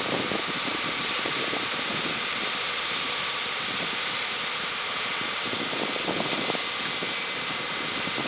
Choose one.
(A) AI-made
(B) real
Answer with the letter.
B